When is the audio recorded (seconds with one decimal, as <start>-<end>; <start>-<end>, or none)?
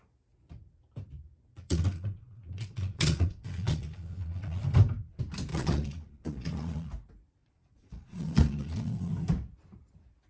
0.0-1.5; 4.6-5.5; 6.9-7.4; 9.1-10.3